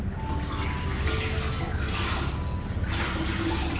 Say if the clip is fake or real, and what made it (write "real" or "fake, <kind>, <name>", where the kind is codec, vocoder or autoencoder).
real